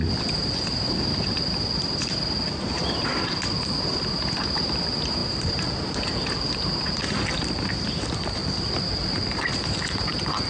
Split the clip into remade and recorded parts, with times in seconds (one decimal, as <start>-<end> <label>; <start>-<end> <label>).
0.0-10.5 recorded